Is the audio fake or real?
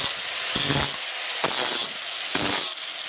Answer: real